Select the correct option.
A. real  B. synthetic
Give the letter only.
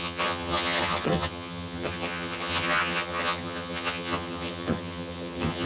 B